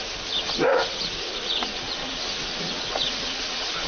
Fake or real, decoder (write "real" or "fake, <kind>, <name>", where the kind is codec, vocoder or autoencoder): fake, vocoder, Vocos